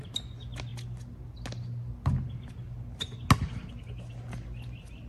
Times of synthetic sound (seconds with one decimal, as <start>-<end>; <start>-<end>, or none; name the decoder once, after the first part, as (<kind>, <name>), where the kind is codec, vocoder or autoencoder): none